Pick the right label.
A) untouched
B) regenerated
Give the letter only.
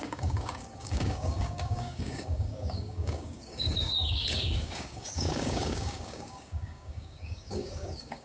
B